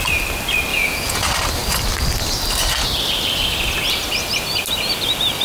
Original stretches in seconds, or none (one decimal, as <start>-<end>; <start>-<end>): 0.0-0.7; 1.2-5.4